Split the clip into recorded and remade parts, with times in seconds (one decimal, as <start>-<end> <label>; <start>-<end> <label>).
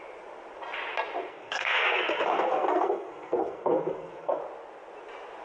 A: 0.0-1.3 recorded; 1.3-4.4 remade; 4.4-5.4 recorded